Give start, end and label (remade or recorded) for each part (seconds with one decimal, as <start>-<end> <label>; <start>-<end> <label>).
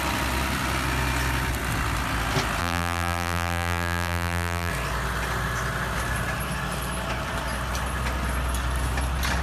0.0-2.6 recorded; 2.6-4.7 remade; 4.7-9.4 recorded